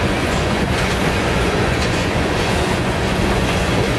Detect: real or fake fake